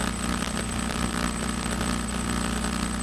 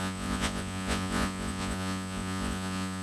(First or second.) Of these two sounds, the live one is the first